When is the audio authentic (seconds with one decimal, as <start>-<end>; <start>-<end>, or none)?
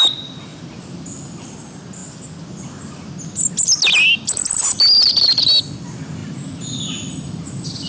0.0-7.9